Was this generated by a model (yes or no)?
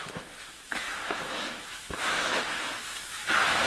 yes